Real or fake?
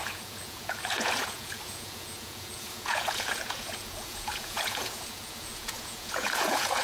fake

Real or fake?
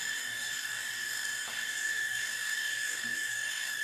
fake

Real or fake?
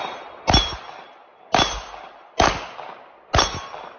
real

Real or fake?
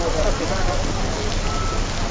real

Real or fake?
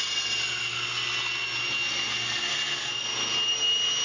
real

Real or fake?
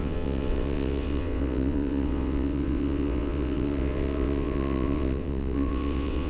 fake